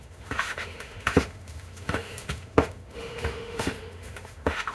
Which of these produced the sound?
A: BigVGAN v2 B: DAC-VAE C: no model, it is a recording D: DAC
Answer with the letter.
B